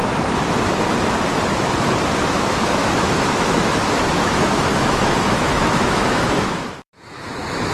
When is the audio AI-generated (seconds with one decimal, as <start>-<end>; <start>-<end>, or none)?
2.2-7.7